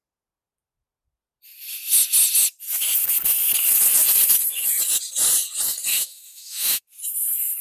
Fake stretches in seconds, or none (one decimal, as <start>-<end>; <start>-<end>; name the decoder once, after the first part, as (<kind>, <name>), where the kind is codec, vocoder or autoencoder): 5.9-6.8 (autoencoder, DAC-VAE)